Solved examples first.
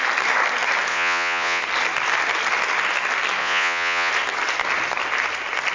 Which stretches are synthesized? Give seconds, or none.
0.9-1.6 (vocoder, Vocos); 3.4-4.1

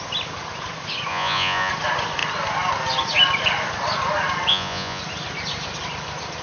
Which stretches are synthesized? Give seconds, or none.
1.1-1.7 (vocoder, Vocos); 4.5-5.0

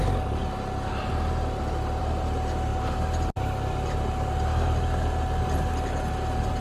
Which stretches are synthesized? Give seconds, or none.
none

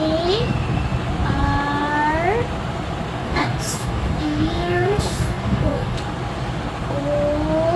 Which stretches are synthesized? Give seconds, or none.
3.2-6.0 (codec, DAC)